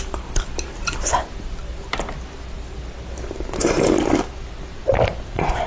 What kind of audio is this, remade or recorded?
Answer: recorded